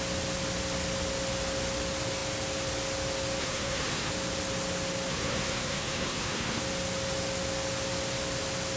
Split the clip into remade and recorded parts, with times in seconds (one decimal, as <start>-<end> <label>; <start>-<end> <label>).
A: 0.0-3.4 recorded; 3.4-4.1 remade; 4.1-5.1 recorded; 5.1-6.6 remade; 6.6-8.8 recorded